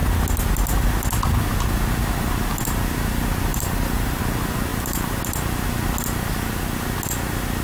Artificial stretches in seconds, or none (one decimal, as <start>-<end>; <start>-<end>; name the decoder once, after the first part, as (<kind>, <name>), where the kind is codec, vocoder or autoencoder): 3.5-4.2 (vocoder, BigVGAN v2); 4.7-5.2